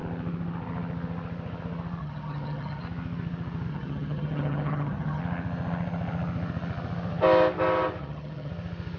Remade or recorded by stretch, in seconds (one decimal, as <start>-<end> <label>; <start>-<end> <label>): 0.0-2.0 recorded; 2.0-2.8 remade; 2.8-3.7 recorded; 3.7-5.2 remade; 5.2-8.0 recorded; 8.0-8.5 remade; 8.5-9.0 recorded